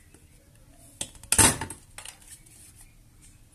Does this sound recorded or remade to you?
recorded